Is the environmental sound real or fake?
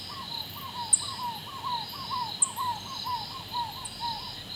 real